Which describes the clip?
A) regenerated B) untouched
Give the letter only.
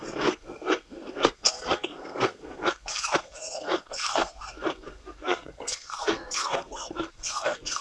A